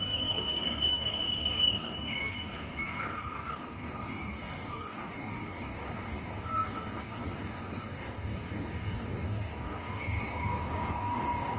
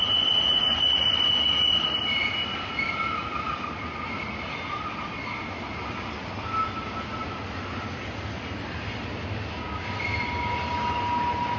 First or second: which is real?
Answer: second